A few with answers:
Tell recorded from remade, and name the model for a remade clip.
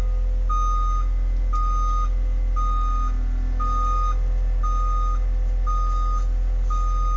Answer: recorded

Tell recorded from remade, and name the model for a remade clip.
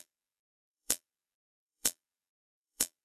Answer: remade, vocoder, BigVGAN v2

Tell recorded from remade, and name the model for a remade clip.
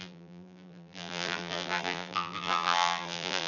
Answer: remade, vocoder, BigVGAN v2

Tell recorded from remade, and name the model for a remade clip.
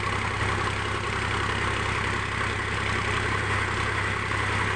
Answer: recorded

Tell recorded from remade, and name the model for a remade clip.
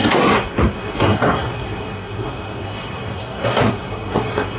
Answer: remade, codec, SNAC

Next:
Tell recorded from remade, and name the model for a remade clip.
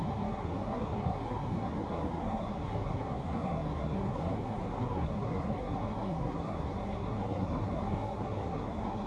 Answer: remade, codec, SNAC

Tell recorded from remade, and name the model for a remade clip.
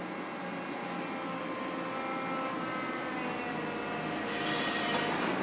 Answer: recorded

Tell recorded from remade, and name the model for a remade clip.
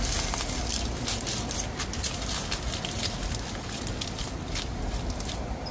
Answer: recorded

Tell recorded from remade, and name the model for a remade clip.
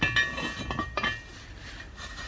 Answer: recorded